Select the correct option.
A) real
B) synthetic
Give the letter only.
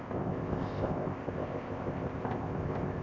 B